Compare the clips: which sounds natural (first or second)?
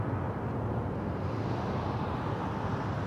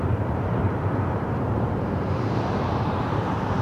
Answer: first